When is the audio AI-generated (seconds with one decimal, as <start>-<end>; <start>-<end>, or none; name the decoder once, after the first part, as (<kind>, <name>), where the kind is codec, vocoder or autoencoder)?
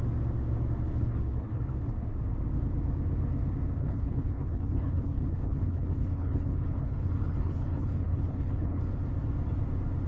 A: 0.9-1.6 (codec, HILCodec); 3.8-8.8